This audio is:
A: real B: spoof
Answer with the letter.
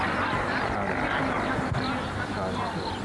A